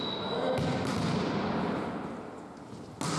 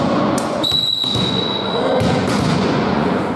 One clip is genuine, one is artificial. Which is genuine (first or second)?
first